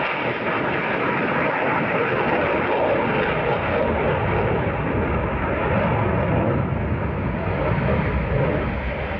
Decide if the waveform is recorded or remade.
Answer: recorded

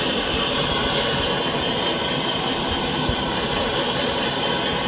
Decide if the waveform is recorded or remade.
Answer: remade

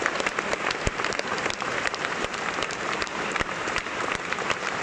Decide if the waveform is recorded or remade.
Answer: remade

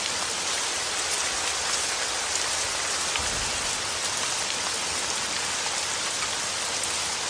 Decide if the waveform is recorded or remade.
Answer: recorded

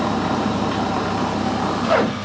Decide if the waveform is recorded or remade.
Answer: remade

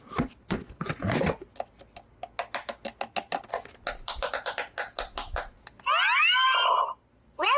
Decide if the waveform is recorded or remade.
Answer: recorded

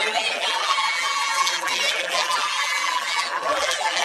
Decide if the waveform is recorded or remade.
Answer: remade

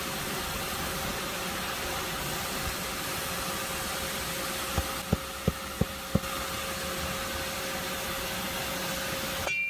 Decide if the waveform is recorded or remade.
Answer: recorded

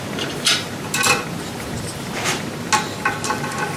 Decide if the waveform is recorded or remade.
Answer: recorded